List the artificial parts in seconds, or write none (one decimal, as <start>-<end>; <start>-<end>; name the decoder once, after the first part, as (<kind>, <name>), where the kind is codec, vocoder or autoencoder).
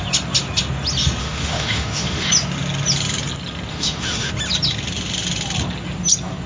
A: 1.2-2.3 (autoencoder, DAC-VAE); 3.7-4.3